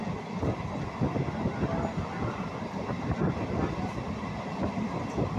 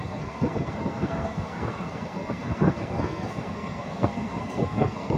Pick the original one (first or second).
first